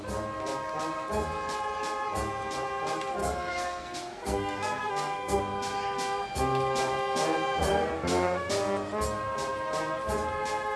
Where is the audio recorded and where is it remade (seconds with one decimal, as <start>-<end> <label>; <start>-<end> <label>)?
0.0-3.2 recorded; 3.2-5.4 remade; 5.4-7.7 recorded; 7.7-8.5 remade; 8.5-10.8 recorded